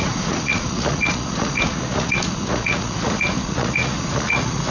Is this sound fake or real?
fake